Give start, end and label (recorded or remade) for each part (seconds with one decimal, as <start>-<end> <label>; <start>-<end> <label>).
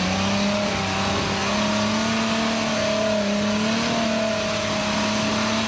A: 0.0-5.7 recorded